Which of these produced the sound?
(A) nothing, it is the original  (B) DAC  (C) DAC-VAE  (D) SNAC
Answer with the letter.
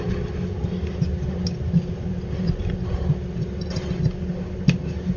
A